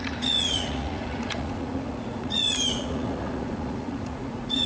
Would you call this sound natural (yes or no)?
no